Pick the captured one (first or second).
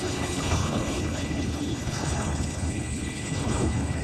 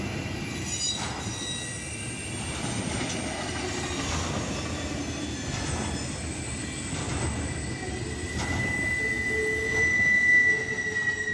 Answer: second